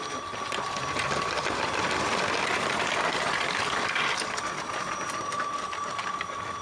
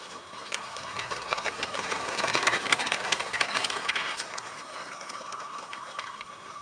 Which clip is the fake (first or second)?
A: second